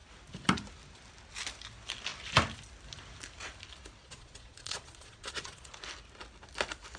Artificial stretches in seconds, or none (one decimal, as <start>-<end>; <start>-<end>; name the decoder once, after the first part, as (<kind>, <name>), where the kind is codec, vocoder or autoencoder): 4.0-5.7 (vocoder, Vocos)